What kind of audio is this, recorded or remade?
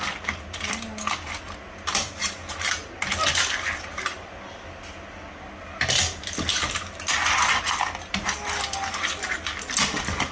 recorded